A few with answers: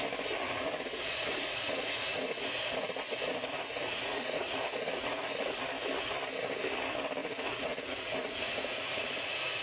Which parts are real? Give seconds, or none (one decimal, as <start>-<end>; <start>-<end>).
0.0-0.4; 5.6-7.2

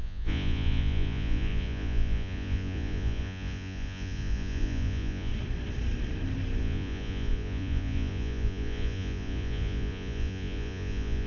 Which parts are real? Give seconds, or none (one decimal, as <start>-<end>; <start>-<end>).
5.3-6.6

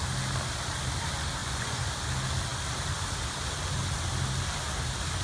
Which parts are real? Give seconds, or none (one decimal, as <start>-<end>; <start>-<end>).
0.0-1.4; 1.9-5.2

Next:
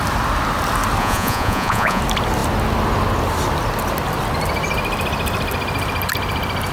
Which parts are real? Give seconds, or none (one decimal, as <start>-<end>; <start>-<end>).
0.0-1.0; 2.0-6.7

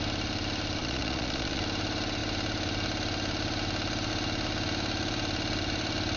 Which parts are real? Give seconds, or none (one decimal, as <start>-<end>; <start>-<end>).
0.0-0.8; 1.6-6.2

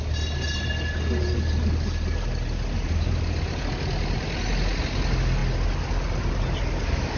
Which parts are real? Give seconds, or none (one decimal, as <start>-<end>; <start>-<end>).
0.0-7.2

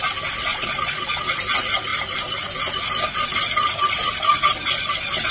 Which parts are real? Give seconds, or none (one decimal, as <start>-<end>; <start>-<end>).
0.0-0.5; 1.4-5.3